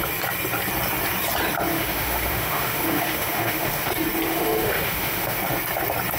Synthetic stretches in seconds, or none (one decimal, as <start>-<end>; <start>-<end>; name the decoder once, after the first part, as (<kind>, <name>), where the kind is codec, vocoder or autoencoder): 1.7-3.9 (autoencoder, DAC-VAE); 4.3-5.4